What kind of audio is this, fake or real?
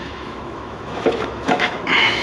fake